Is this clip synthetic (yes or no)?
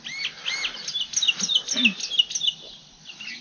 no